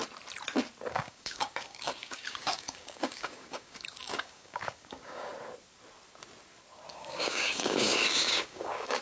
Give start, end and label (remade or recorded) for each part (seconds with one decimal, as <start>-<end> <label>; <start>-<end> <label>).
0.0-0.9 recorded; 0.9-5.3 remade; 5.3-6.9 recorded; 6.9-9.0 remade